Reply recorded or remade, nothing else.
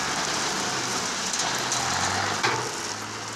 recorded